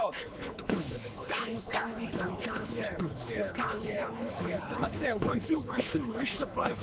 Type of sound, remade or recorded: remade